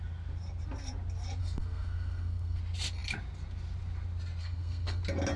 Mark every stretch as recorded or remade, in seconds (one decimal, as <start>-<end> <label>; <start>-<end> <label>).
0.0-1.4 recorded; 1.4-2.6 remade; 2.6-4.4 recorded; 4.4-5.0 remade; 5.0-5.4 recorded